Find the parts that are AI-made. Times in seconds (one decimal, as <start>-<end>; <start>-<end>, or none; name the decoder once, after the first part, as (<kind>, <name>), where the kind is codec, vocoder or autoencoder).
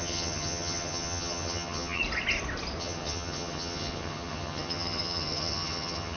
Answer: 0.0-2.0 (vocoder, HiFi-GAN); 2.8-6.2